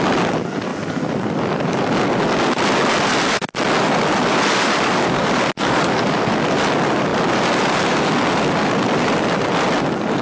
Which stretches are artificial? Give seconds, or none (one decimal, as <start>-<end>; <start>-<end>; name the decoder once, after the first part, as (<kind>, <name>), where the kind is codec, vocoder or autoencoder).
4.3-6.3 (codec, DAC)